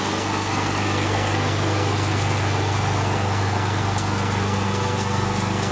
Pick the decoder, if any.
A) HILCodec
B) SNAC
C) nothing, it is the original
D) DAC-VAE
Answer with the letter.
B